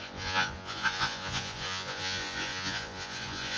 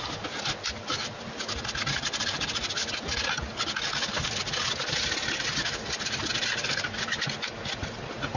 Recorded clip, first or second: second